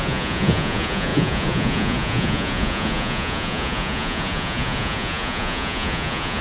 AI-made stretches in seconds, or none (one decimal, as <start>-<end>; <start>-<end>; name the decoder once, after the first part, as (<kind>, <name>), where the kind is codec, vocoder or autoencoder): 0.0-6.4 (vocoder, Vocos)